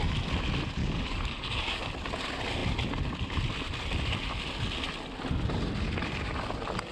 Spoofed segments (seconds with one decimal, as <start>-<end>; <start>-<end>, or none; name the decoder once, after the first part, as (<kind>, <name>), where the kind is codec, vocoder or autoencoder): 0.8-1.8 (codec, DAC)